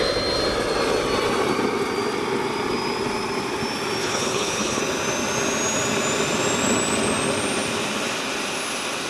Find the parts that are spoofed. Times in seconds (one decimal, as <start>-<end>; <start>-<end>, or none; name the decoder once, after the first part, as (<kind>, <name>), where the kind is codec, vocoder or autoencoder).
4.0-4.8 (codec, HILCodec)

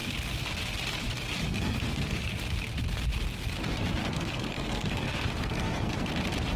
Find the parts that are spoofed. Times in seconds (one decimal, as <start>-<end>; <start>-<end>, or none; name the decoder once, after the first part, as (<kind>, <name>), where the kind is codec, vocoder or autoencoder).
1.5-2.4 (codec, SNAC); 4.0-6.1

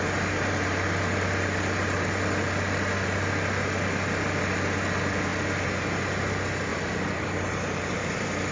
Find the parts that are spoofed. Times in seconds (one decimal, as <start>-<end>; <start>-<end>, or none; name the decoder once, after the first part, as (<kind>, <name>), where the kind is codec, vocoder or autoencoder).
6.7-8.5 (vocoder, BigVGAN v2)

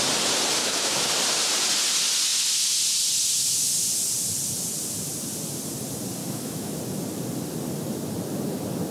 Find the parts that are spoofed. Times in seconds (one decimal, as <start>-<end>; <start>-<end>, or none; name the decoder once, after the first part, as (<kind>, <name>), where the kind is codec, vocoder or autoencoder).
0.6-1.1 (autoencoder, DAC-VAE); 6.2-6.7

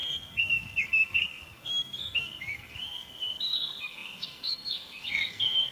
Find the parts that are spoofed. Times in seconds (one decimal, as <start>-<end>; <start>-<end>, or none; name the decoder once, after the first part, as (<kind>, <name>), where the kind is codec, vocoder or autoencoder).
0.0-5.7 (codec, SNAC)

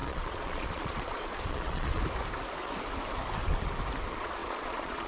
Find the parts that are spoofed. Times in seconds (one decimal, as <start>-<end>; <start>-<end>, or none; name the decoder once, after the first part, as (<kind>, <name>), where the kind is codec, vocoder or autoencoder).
0.0-2.0 (vocoder, Vocos); 4.0-5.1

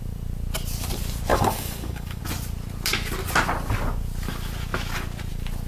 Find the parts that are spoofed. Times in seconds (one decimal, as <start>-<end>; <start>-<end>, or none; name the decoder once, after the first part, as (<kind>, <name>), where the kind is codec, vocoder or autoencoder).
1.3-2.2 (codec, DAC)

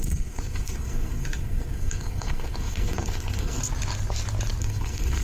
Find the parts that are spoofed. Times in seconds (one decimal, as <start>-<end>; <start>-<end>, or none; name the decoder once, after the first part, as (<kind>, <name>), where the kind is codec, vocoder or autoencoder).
0.0-3.6 (codec, SNAC); 4.6-5.2